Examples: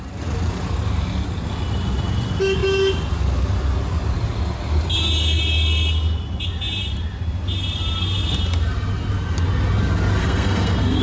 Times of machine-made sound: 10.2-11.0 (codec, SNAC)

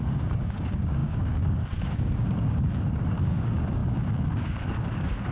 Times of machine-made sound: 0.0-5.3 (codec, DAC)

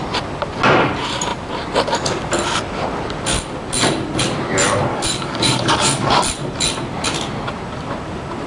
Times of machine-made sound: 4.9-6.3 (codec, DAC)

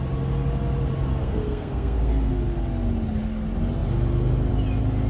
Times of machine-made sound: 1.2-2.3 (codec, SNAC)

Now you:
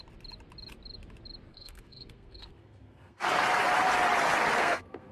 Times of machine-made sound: 1.5-3.3 (codec, SNAC); 4.6-5.1

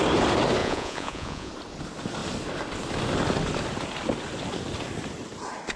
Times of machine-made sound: 0.6-1.5 (vocoder, Vocos)